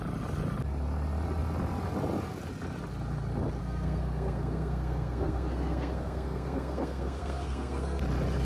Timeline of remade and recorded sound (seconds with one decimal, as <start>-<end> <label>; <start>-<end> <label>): 0.0-3.6 recorded; 3.6-8.0 remade; 8.0-8.4 recorded